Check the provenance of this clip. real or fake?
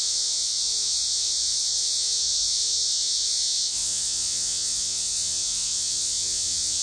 fake